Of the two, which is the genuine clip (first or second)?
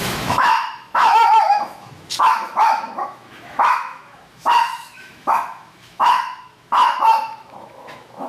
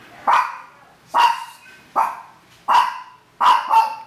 second